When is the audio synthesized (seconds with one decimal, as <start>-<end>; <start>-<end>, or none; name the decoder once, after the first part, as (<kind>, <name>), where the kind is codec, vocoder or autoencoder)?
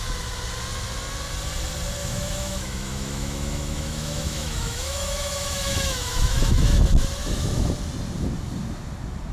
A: 2.0-6.8 (autoencoder, DAC-VAE); 7.2-7.7